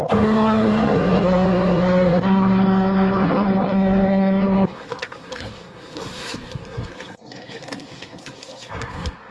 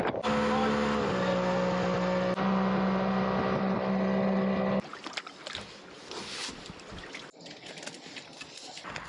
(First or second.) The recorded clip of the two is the second